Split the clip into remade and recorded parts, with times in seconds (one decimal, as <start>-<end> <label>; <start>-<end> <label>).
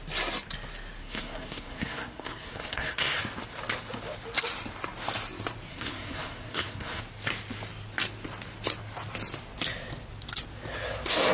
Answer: 0.0-1.0 recorded; 1.0-3.2 remade; 3.2-5.7 recorded; 5.7-7.0 remade; 7.0-11.3 recorded